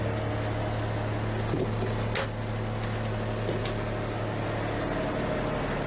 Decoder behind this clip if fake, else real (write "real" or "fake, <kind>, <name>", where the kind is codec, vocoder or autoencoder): real